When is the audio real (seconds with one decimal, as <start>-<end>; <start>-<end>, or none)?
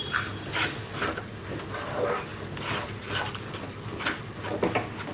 0.0-5.1